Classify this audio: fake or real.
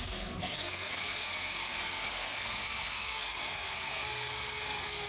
fake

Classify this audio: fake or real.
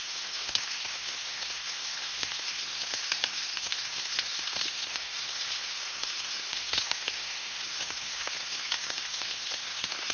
fake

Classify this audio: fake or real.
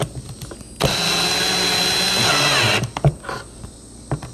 real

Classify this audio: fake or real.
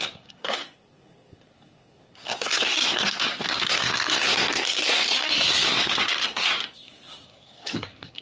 fake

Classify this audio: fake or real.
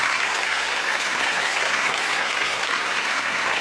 fake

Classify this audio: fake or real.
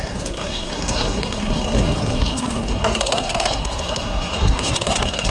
fake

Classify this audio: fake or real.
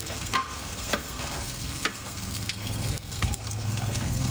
fake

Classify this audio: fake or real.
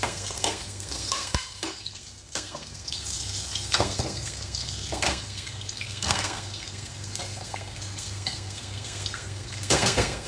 fake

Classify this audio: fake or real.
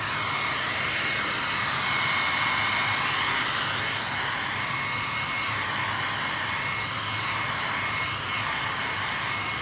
real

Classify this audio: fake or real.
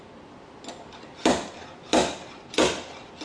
real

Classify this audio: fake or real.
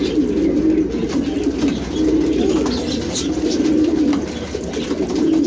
real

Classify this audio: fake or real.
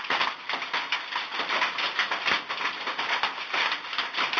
real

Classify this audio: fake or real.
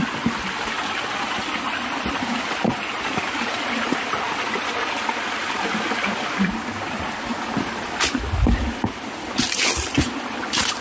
real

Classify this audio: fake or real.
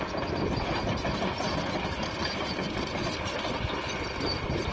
real